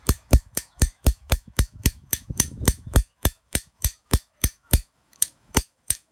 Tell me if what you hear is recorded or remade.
remade